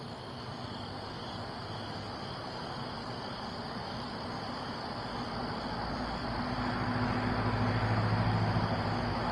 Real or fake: real